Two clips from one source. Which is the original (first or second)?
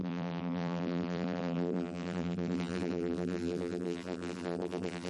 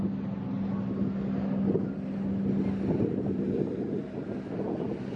second